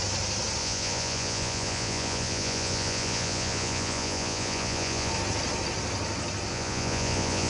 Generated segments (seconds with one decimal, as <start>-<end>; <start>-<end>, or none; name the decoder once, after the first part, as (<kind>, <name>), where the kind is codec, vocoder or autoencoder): 0.6-5.1 (vocoder, Vocos); 6.5-7.5